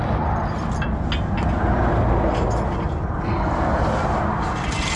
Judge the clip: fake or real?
real